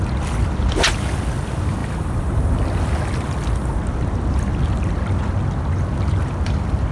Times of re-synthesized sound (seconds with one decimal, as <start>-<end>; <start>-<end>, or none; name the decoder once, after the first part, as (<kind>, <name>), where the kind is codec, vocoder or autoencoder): none